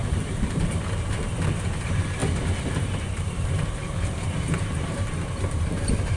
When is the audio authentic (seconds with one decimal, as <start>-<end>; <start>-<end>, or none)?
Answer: 2.2-2.8